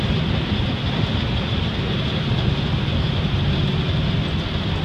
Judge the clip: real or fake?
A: real